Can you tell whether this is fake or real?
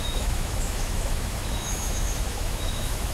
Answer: fake